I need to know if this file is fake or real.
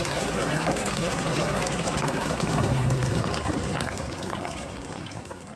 fake